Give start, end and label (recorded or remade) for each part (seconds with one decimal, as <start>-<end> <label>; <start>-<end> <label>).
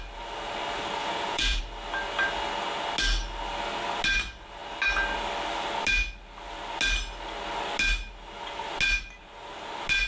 0.0-1.0 recorded; 1.0-1.6 remade; 1.6-10.1 recorded